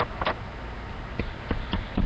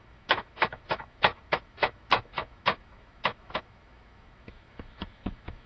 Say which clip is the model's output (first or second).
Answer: second